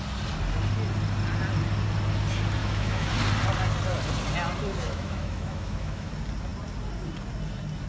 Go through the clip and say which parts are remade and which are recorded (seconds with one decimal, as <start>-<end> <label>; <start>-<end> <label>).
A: 0.0-2.6 recorded; 2.6-3.1 remade; 3.1-4.7 recorded; 4.7-6.1 remade; 6.1-7.9 recorded